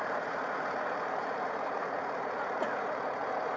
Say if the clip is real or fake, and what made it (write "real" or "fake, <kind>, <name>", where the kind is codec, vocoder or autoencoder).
fake, vocoder, Vocos